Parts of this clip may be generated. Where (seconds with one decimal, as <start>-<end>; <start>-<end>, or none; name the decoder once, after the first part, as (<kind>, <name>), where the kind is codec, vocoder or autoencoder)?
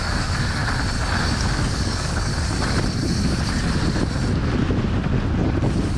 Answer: 0.0-0.6 (codec, DAC); 1.6-2.3